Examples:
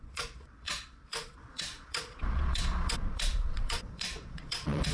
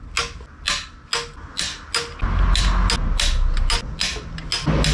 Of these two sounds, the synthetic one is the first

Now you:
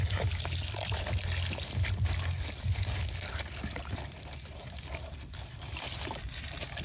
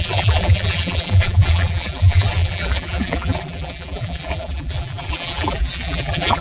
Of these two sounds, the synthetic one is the second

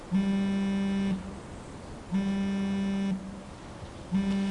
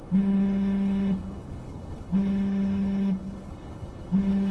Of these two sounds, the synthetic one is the second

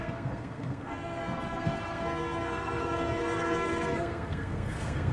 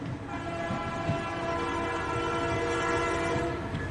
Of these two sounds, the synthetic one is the first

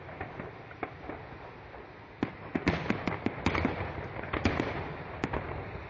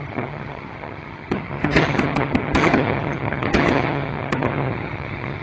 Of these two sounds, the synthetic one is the second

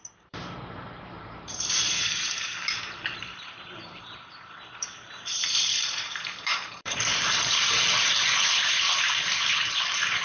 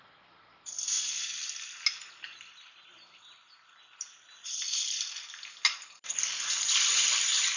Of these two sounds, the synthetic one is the first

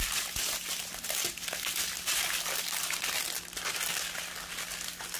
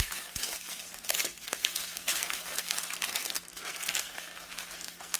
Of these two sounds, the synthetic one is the second